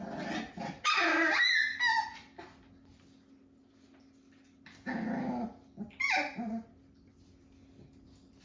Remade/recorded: recorded